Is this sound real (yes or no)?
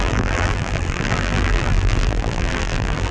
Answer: no